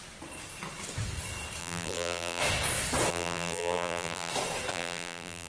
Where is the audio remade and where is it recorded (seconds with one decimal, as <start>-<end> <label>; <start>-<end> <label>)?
0.0-1.6 recorded; 1.6-2.4 remade; 2.4-3.1 recorded; 3.1-4.3 remade; 4.3-4.7 recorded; 4.7-5.5 remade